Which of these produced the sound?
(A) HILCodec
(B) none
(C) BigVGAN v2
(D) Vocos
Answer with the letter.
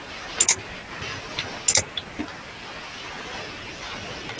B